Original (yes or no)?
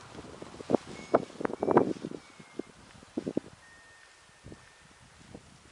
yes